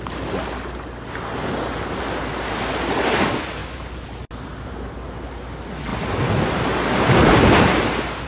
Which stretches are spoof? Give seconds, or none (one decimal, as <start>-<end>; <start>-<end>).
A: none